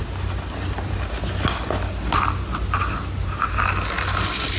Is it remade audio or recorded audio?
recorded